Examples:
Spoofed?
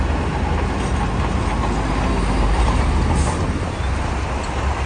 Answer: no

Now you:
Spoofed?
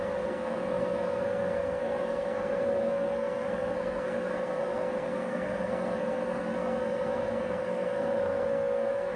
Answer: yes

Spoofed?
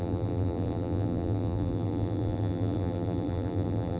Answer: yes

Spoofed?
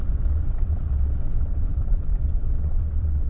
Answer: yes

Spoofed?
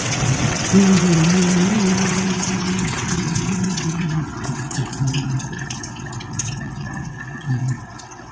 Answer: yes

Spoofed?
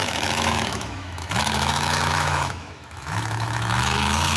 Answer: yes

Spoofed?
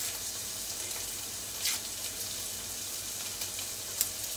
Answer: no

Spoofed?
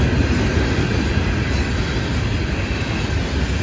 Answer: no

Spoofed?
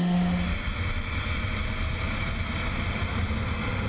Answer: no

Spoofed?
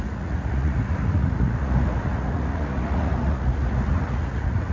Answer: yes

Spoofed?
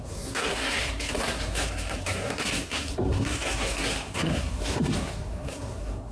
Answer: yes